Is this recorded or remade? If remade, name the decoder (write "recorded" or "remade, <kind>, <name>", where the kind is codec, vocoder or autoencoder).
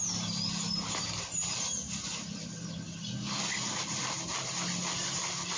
recorded